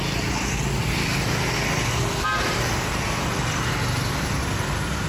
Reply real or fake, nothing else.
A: real